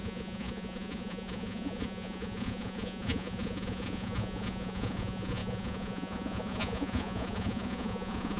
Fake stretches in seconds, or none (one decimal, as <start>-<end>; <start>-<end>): 0.0-8.4